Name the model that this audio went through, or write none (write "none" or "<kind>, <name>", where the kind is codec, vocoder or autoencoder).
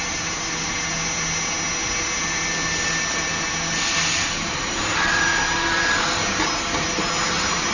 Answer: none